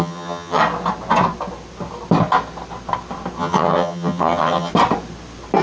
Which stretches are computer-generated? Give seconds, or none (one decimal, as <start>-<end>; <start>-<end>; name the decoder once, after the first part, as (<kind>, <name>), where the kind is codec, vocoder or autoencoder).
0.0-0.6 (vocoder, HiFi-GAN); 3.4-4.7